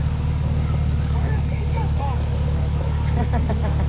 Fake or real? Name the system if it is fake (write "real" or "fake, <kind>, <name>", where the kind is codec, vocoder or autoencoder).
fake, codec, DAC